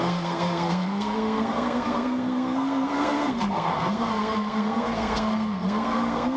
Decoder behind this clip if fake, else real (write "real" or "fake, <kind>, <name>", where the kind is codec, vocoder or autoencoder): fake, codec, SNAC